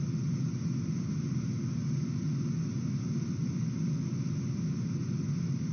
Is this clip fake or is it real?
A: real